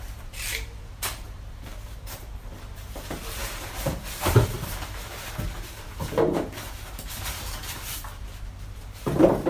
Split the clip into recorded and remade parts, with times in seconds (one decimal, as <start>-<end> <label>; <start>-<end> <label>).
0.0-9.5 remade